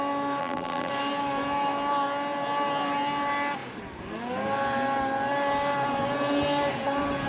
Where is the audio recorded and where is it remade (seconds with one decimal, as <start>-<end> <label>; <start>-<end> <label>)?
0.0-0.4 recorded; 0.4-0.9 remade; 0.9-7.3 recorded